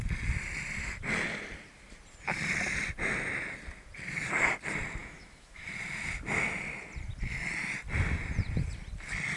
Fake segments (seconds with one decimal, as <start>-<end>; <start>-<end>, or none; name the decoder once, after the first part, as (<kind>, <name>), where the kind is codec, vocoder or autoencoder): 5.0-5.7 (autoencoder, DAC-VAE)